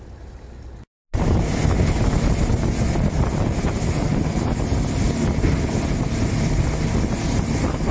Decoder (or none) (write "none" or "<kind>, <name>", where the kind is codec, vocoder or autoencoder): none